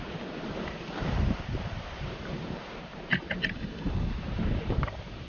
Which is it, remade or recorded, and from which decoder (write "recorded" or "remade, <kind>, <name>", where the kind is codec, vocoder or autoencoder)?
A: remade, vocoder, BigVGAN v2